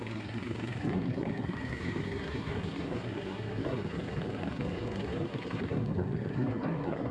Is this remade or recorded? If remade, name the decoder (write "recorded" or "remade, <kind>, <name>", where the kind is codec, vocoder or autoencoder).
remade, codec, SNAC